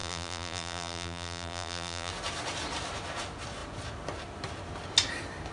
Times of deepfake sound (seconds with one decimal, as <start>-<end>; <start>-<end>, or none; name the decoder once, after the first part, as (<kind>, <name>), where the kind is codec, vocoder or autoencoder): 0.0-2.1 (vocoder, BigVGAN v2)